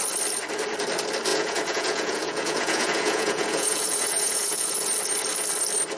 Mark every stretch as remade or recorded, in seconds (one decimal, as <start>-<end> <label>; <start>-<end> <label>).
0.0-1.3 recorded; 1.3-4.9 remade; 4.9-6.0 recorded